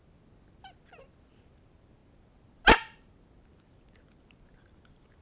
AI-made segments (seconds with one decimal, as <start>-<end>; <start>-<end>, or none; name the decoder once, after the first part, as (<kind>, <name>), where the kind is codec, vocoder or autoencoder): none